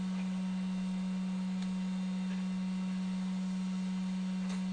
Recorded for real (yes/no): yes